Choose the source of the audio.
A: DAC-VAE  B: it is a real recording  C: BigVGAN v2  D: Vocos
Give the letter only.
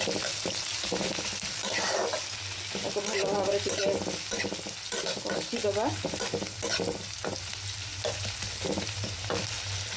B